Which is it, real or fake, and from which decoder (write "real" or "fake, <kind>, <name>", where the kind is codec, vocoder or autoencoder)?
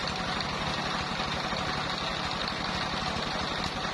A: real